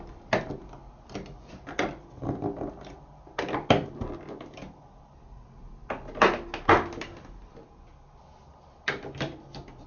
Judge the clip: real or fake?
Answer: real